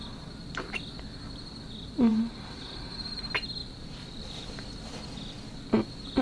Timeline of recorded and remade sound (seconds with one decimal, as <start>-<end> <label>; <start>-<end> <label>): 0.0-2.1 recorded; 2.1-2.9 remade; 2.9-3.6 recorded; 3.6-4.5 remade; 4.5-6.2 recorded